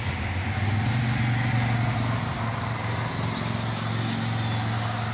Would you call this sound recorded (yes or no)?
yes